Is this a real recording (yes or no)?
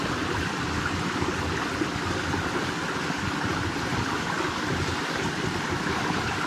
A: yes